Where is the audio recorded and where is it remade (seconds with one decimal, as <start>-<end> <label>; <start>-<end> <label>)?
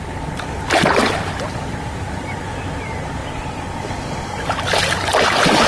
0.0-5.7 recorded